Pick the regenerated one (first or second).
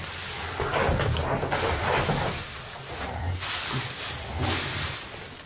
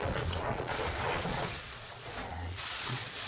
second